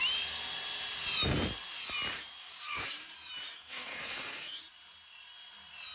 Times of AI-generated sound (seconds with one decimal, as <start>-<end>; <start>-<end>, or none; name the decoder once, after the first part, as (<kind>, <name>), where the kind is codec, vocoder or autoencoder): 2.4-3.1 (codec, DAC); 3.5-4.6